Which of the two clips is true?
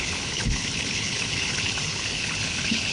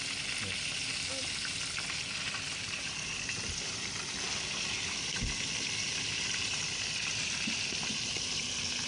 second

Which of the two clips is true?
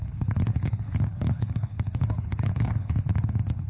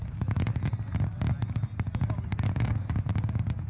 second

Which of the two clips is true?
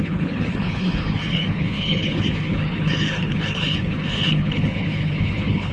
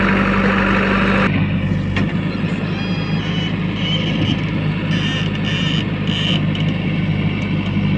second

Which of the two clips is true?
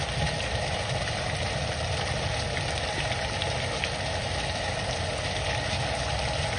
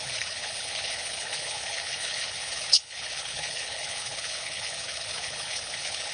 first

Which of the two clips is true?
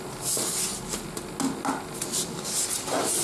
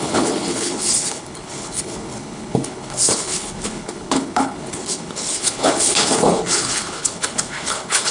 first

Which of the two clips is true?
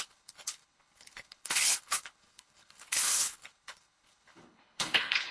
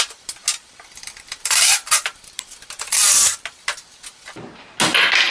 second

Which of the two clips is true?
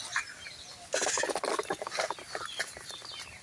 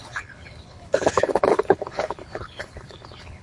first